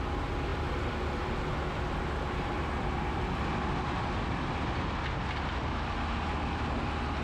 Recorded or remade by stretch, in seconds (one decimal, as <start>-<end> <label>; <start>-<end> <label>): 0.0-7.2 recorded